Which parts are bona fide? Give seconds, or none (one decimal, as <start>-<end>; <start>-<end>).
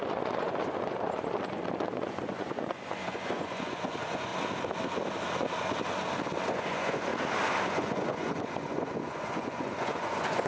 4.3-6.5; 7.1-7.7